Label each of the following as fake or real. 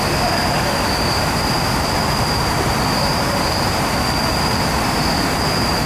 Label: real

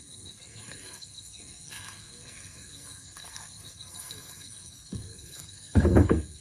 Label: fake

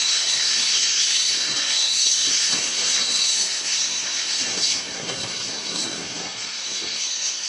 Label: fake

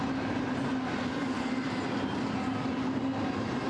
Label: real